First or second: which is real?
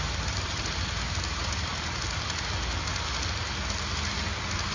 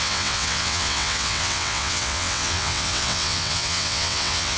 first